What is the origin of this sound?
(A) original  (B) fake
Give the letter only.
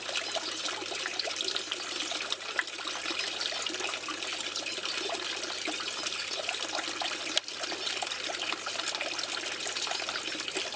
A